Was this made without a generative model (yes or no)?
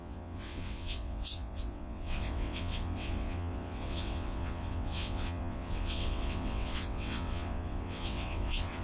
no